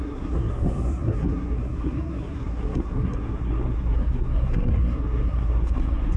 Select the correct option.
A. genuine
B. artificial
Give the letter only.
B